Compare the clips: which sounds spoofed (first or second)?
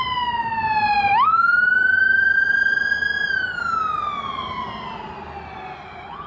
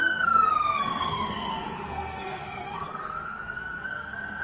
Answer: second